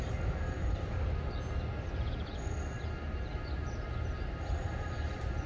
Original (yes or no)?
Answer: yes